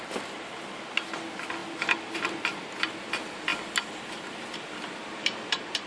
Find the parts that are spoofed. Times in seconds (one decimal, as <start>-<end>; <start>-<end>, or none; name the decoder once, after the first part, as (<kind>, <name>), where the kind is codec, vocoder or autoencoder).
none